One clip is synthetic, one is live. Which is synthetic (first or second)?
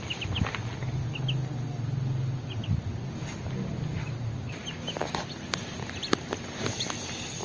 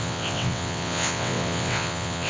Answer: second